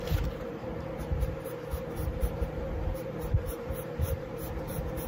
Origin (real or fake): fake